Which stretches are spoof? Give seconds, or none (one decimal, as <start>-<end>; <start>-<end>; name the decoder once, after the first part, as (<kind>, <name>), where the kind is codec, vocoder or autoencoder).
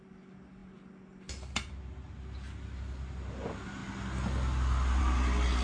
none